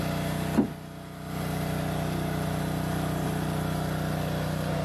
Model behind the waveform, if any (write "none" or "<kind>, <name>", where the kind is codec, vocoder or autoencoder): none